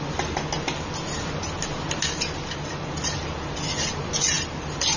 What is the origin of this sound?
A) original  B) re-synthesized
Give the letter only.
A